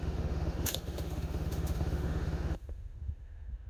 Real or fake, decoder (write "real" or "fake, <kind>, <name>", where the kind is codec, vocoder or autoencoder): fake, autoencoder, DAC-VAE